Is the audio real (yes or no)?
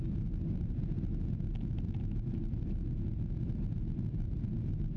yes